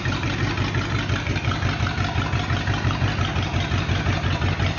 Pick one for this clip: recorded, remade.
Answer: recorded